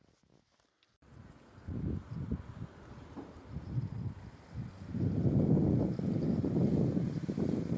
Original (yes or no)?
yes